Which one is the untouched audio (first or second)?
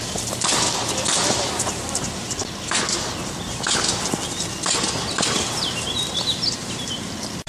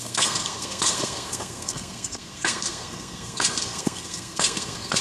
first